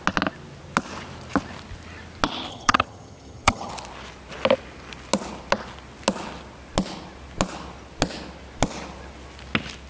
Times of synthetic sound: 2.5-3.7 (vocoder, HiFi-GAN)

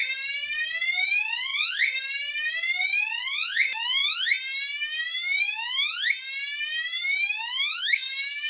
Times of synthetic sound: 7.8-8.5 (codec, DAC)

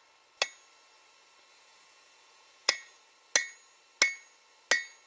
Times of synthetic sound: 1.5-3.0 (vocoder, Vocos)

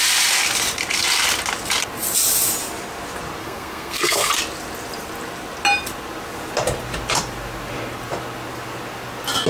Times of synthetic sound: 3.4-4.3 (codec, SNAC)